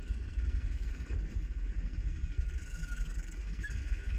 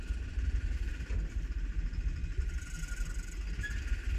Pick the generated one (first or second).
first